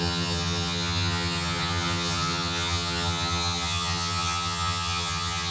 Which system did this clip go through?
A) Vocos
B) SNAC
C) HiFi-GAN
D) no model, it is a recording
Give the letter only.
C